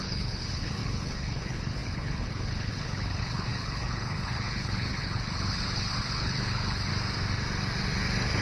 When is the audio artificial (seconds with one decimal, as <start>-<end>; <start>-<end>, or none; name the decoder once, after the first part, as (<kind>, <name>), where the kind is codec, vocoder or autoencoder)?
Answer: 0.0-6.9 (codec, HILCodec)